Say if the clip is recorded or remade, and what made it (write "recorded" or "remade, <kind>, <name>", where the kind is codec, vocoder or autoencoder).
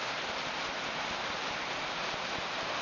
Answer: recorded